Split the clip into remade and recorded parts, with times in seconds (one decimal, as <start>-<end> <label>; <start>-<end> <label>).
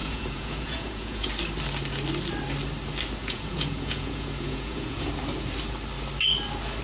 0.0-1.3 remade; 1.3-3.2 recorded; 3.2-5.1 remade; 5.1-6.8 recorded